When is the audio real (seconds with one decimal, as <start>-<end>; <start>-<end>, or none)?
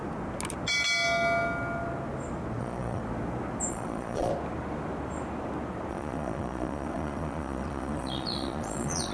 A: 0.0-2.6; 3.0-3.7; 4.3-5.9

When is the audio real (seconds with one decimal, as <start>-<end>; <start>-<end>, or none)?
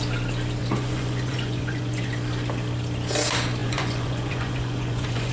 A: 0.0-0.6; 2.1-3.6